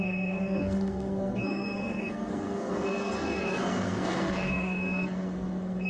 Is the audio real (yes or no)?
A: no